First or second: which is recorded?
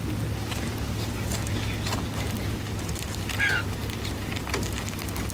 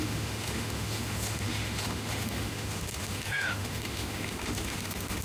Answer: first